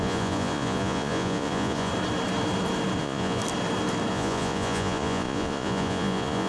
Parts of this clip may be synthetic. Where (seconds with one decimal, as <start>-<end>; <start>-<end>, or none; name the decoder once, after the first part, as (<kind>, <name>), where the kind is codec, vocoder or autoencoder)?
0.0-1.9 (vocoder, Vocos); 3.0-3.4; 4.1-6.5